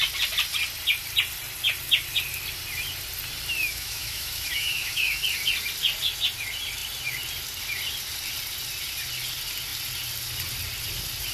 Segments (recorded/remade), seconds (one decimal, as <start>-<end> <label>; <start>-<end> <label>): 0.0-3.6 recorded; 3.6-5.2 remade; 5.2-11.3 recorded